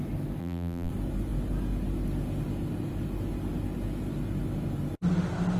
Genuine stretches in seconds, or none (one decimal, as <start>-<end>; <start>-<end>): 0.0-0.4; 0.9-5.6

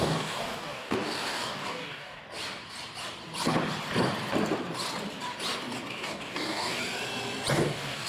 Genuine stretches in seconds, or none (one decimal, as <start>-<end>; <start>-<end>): 2.2-5.9; 6.8-7.5

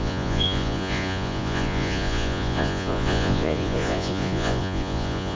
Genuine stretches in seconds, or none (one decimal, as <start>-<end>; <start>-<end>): none